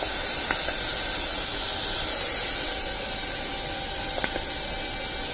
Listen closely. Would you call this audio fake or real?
real